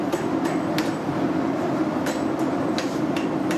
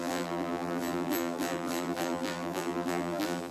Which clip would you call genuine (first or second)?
first